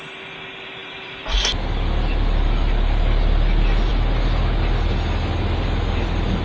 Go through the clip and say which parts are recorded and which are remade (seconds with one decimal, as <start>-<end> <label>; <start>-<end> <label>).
0.0-6.4 recorded

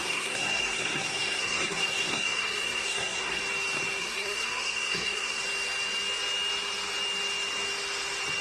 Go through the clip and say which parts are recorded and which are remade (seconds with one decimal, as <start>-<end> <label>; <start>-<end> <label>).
0.0-3.4 remade; 3.4-4.0 recorded; 4.0-5.4 remade; 5.4-8.4 recorded

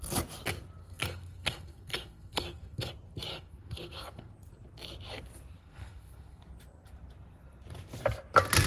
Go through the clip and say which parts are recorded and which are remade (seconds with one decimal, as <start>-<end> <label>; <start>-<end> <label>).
0.0-0.8 recorded; 0.8-2.9 remade; 2.9-3.3 recorded; 3.3-4.3 remade; 4.3-5.6 recorded; 5.6-6.4 remade; 6.4-8.7 recorded

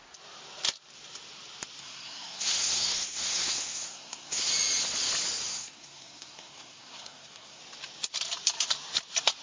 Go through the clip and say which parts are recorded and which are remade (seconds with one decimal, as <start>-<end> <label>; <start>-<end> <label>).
0.0-1.8 recorded; 1.8-4.5 remade; 4.5-5.5 recorded; 5.5-7.6 remade; 7.6-9.4 recorded

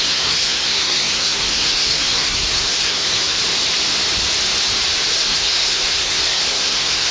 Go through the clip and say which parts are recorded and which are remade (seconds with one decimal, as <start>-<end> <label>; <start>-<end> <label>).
0.0-3.4 remade; 3.4-5.1 recorded; 5.1-7.1 remade

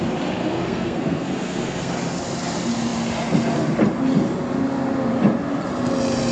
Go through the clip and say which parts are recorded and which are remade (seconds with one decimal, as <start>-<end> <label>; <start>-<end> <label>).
0.0-0.4 recorded; 0.4-1.9 remade; 1.9-6.3 recorded

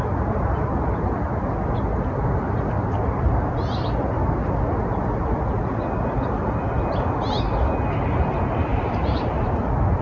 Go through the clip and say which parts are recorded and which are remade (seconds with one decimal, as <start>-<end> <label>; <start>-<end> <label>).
0.0-10.0 recorded